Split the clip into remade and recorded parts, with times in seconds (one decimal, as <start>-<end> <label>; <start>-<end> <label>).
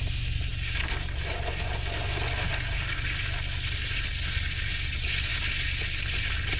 0.0-6.6 recorded